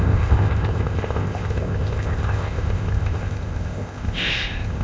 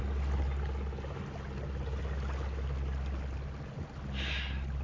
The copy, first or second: first